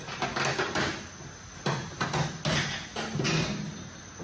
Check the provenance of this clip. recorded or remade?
recorded